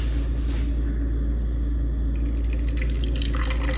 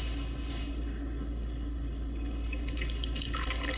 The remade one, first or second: second